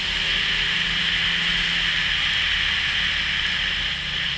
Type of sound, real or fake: real